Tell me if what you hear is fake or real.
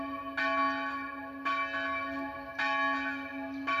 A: real